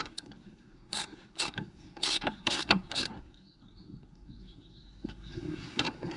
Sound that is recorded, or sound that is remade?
remade